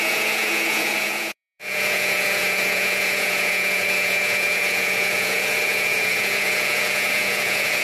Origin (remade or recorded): remade